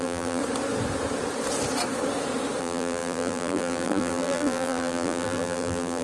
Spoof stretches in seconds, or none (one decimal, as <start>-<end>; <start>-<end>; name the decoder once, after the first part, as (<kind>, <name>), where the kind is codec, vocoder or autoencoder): 0.0-0.4 (vocoder, BigVGAN v2); 2.6-6.0